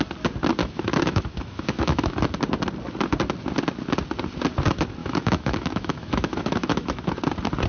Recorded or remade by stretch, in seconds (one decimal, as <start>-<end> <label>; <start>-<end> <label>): 0.0-0.6 recorded; 0.6-2.2 remade; 2.2-5.0 recorded; 5.0-7.2 remade; 7.2-7.7 recorded